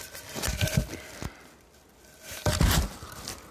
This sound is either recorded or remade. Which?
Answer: recorded